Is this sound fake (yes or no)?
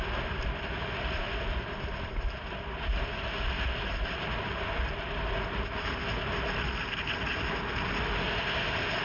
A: no